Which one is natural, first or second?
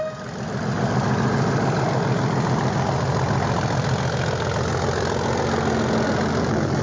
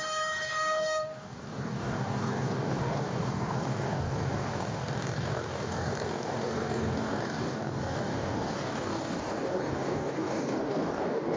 first